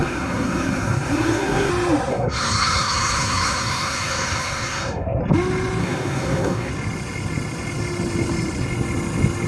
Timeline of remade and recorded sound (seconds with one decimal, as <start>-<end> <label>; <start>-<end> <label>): 0.0-1.7 remade; 1.7-2.1 recorded; 2.1-5.2 remade; 5.2-5.8 recorded; 5.8-6.7 remade; 6.7-9.5 recorded